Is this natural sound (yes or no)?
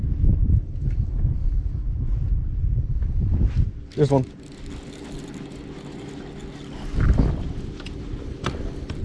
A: yes